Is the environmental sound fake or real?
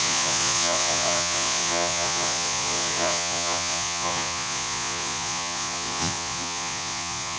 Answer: fake